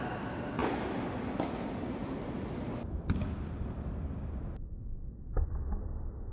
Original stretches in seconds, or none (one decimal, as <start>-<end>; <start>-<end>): 0.0-6.3